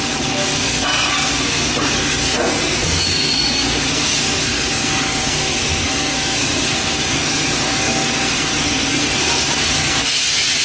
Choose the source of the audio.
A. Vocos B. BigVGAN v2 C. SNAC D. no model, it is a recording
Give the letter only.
C